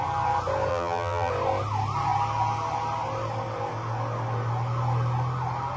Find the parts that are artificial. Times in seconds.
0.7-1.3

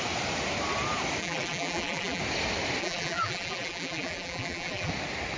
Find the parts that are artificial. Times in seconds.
1.2-2.2; 2.8-4.9

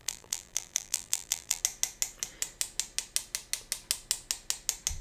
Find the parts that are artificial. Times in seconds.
0.0-1.6

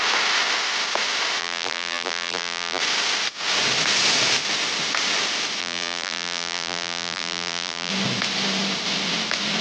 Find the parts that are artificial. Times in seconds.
1.4-2.8; 5.6-7.9